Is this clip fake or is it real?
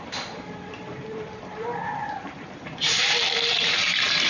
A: fake